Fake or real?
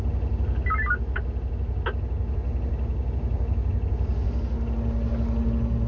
real